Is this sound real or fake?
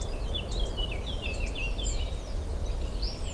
real